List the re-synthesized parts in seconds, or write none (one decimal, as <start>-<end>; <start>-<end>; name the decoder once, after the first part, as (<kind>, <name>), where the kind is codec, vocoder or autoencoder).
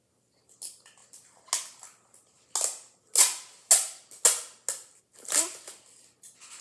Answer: none